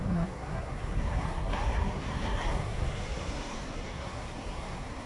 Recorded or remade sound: remade